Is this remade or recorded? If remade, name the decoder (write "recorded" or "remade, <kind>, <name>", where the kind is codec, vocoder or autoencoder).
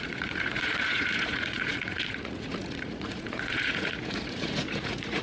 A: remade, vocoder, Vocos